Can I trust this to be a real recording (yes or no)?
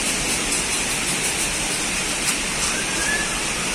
yes